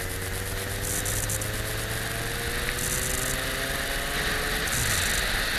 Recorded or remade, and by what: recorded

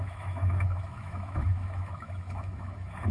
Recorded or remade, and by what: remade, autoencoder, DAC-VAE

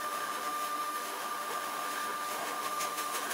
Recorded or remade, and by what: remade, autoencoder, DAC-VAE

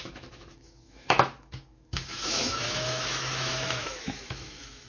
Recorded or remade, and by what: remade, autoencoder, DAC-VAE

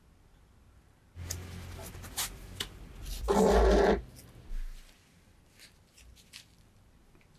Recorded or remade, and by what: recorded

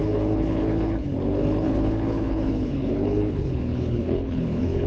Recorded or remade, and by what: remade, codec, HILCodec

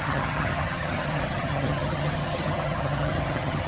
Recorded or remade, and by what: remade, vocoder, HiFi-GAN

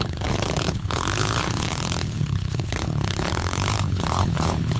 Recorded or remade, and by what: remade, codec, HILCodec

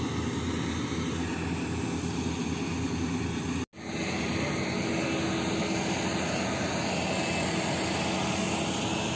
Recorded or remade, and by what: recorded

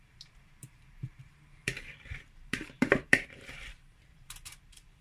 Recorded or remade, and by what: remade, vocoder, BigVGAN v2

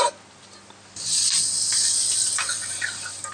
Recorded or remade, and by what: recorded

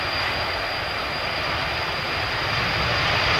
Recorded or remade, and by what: recorded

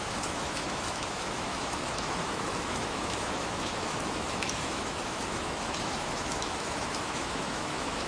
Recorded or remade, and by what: remade, autoencoder, DAC-VAE